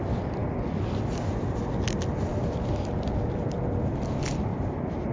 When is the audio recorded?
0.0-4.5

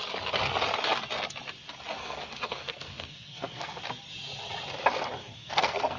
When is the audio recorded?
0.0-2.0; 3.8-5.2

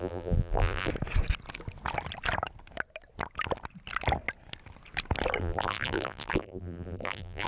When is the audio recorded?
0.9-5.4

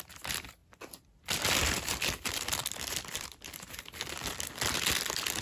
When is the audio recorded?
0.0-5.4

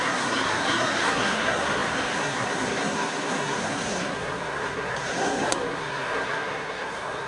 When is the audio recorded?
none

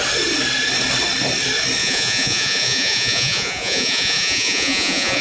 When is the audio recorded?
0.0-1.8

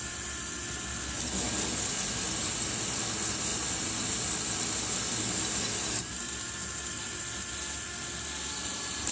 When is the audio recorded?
0.0-9.1

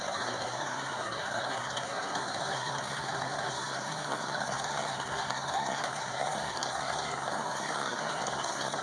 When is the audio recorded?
none